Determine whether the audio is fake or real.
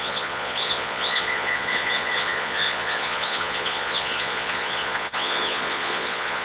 fake